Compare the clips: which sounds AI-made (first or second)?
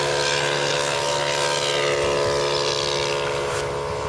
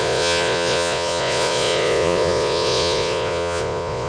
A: second